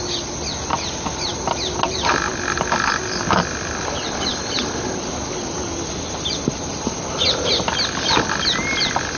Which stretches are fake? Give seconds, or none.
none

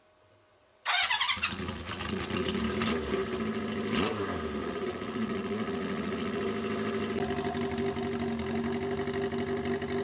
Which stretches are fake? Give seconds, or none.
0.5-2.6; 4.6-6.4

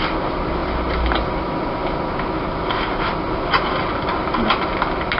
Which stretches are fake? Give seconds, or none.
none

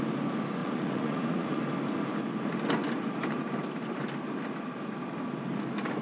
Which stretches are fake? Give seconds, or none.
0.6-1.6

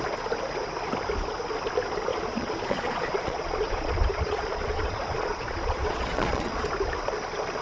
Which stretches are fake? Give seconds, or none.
2.1-6.7